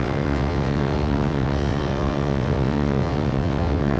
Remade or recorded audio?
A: remade